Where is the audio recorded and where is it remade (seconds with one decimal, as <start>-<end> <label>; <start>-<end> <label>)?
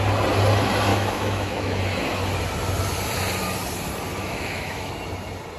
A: 0.0-0.9 recorded; 0.9-1.8 remade; 1.8-4.2 recorded; 4.2-4.9 remade; 4.9-5.6 recorded